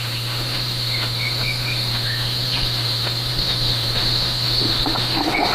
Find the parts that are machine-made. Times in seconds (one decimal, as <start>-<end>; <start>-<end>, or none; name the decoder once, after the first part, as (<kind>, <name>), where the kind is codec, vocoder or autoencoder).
0.0-5.5 (autoencoder, DAC-VAE)